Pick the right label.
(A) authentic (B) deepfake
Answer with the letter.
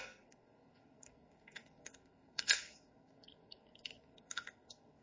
B